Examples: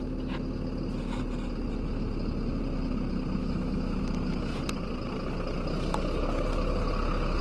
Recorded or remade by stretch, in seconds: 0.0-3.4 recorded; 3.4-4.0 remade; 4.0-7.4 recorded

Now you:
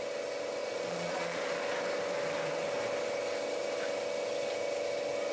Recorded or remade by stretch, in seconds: 0.0-0.6 recorded; 0.6-1.5 remade; 1.5-5.3 recorded

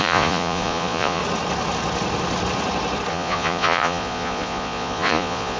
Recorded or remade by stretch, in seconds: 0.0-1.2 remade; 1.2-3.1 recorded; 3.1-5.6 remade

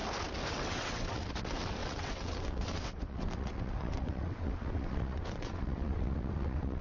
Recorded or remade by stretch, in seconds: 0.0-0.5 recorded; 0.5-6.8 remade

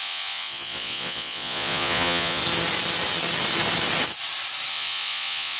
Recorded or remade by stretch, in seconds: 0.0-2.4 remade; 2.4-4.7 recorded; 4.7-5.6 remade